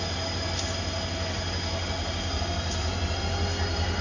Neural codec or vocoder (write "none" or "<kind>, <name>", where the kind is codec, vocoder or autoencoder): none